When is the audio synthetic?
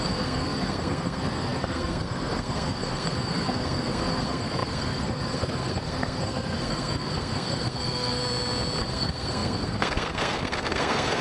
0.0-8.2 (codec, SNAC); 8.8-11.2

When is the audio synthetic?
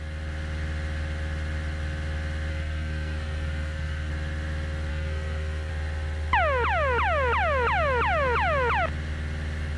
2.5-4.1 (codec, SNAC); 4.9-5.7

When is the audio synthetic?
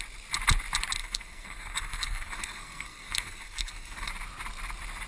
1.0-4.1 (codec, SNAC)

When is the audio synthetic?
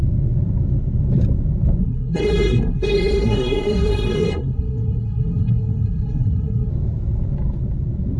1.8-6.7 (codec, SNAC)